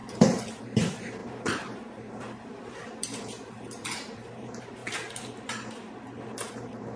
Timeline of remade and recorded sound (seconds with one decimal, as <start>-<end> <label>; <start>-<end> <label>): 0.0-4.8 remade; 4.8-6.5 recorded; 6.5-7.0 remade